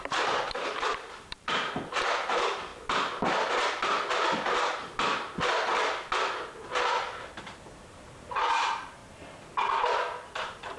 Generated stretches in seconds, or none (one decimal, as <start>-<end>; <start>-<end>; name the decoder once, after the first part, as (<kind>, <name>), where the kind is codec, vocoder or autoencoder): 0.0-2.7 (vocoder, BigVGAN v2); 7.4-9.0; 10.4-10.8